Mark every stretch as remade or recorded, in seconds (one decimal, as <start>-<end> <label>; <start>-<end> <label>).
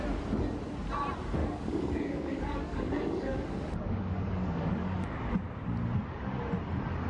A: 0.0-1.4 recorded; 1.4-5.3 remade; 5.3-7.1 recorded